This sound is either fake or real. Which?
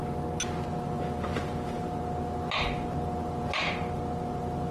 real